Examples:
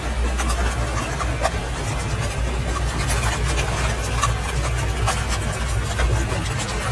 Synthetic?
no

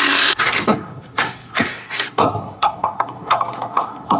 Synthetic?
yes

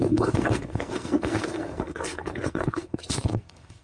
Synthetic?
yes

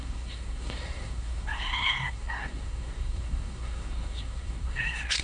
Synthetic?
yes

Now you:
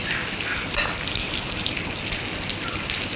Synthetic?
no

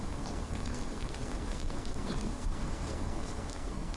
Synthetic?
yes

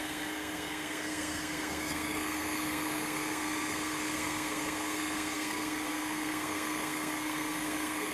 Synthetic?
yes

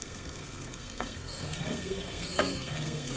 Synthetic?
yes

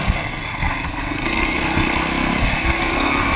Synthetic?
yes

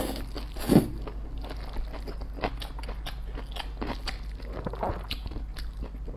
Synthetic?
no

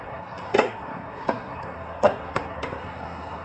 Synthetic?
yes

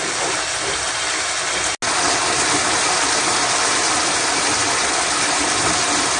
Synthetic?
no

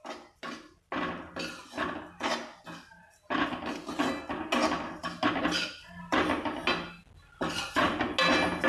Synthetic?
no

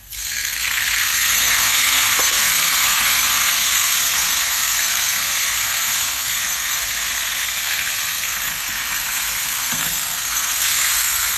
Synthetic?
yes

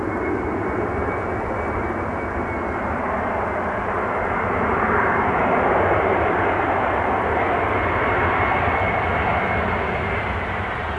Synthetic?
no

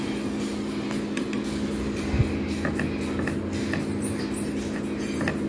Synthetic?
no